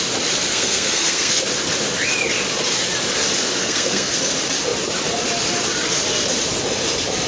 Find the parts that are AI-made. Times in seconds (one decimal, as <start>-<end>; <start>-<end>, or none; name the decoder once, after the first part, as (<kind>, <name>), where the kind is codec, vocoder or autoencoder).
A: 0.5-1.4 (codec, SNAC); 3.6-4.2